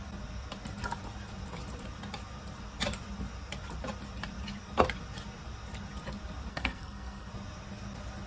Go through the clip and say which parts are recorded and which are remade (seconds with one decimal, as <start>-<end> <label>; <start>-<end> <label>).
0.0-6.5 recorded; 6.5-7.3 remade; 7.3-8.3 recorded

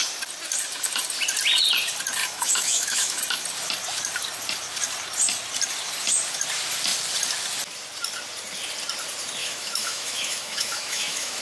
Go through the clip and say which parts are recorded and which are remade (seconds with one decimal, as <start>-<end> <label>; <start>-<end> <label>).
0.0-2.2 recorded; 2.2-3.2 remade; 3.2-9.4 recorded; 9.4-11.4 remade

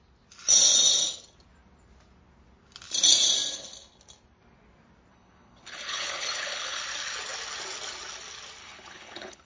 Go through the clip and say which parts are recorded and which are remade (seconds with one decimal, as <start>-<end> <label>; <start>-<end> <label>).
0.0-5.1 recorded; 5.1-6.8 remade; 6.8-8.6 recorded; 8.6-9.5 remade

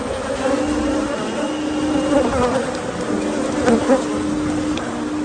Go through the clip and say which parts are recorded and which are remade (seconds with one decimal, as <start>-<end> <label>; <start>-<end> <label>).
0.0-5.2 recorded

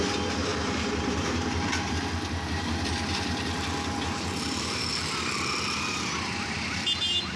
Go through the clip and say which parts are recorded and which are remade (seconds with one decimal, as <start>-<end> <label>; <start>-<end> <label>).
0.0-0.5 recorded; 0.5-4.9 remade; 4.9-7.4 recorded